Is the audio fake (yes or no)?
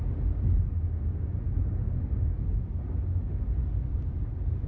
no